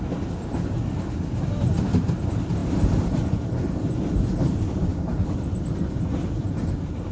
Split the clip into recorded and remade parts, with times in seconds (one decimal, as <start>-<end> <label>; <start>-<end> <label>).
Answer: 0.0-2.6 remade; 2.6-4.1 recorded; 4.1-7.1 remade